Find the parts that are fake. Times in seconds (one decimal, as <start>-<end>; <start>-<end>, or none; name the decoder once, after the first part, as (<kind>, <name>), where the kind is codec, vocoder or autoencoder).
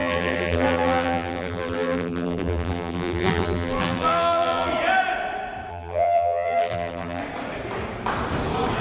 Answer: 0.0-4.7 (vocoder, BigVGAN v2); 5.7-7.2